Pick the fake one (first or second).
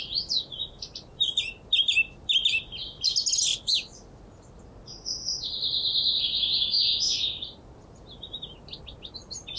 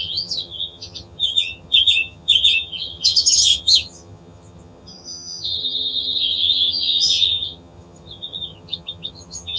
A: second